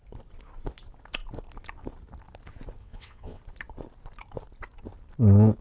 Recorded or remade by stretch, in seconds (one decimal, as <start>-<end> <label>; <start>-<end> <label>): 0.0-2.8 recorded; 2.8-3.4 remade; 3.4-5.6 recorded